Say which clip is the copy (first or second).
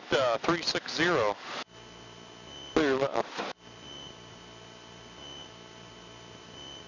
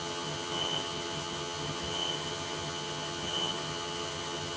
second